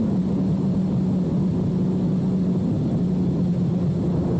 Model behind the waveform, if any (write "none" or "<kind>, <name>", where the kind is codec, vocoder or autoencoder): none